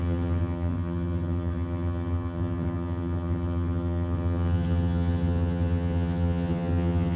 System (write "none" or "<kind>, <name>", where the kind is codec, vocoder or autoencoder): vocoder, HiFi-GAN